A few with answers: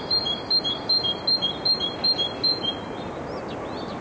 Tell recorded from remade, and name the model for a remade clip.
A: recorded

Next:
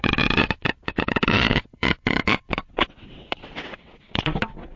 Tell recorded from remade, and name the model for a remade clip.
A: remade, vocoder, WaveNeXt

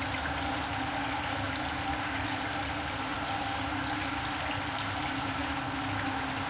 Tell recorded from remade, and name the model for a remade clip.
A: recorded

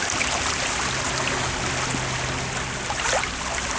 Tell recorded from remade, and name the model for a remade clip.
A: recorded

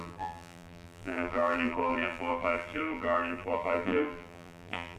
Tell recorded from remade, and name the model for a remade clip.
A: remade, vocoder, BigVGAN v2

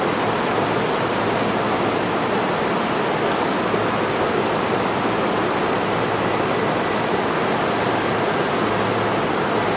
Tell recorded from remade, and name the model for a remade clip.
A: recorded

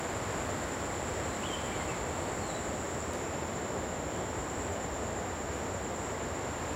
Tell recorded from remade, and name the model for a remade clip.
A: recorded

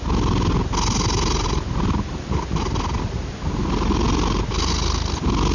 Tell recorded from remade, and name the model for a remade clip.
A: recorded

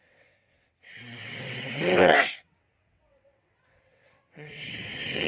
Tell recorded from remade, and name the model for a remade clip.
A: remade, vocoder, WaveNeXt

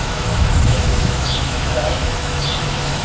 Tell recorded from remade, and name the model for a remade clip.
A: remade, autoencoder, DAC-VAE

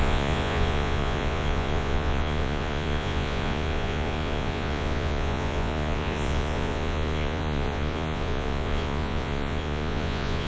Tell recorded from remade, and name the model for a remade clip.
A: remade, vocoder, Vocos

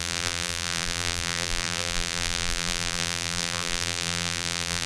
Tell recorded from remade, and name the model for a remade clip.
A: remade, vocoder, BigVGAN v2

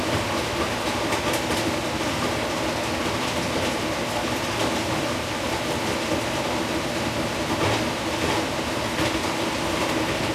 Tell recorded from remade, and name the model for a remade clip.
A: recorded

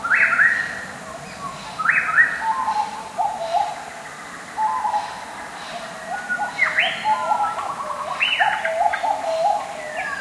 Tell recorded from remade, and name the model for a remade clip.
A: recorded